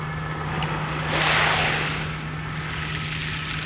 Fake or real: real